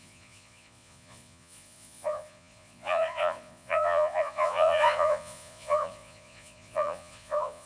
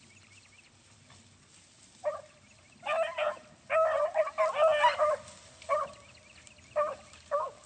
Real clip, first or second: second